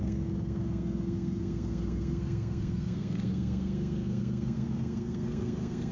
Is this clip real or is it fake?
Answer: fake